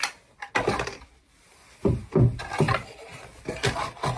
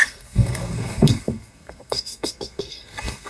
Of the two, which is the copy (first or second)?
second